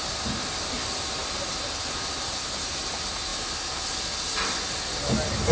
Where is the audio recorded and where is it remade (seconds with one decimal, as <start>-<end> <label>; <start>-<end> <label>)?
0.0-5.5 recorded